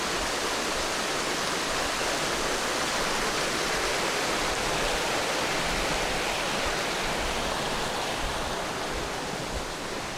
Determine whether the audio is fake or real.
real